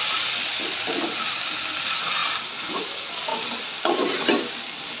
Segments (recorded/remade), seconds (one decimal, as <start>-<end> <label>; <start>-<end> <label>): 0.0-2.2 remade; 2.2-2.8 recorded; 2.8-3.3 remade; 3.3-4.2 recorded; 4.2-5.0 remade